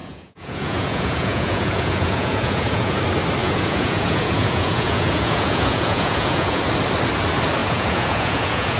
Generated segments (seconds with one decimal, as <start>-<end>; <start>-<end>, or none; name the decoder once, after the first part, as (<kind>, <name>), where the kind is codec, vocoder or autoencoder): 0.0-3.0 (vocoder, Vocos); 3.4-6.6; 7.6-8.8